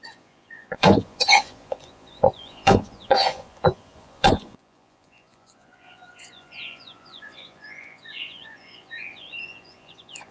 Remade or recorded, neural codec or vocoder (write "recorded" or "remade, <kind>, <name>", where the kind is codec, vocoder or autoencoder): remade, vocoder, Vocos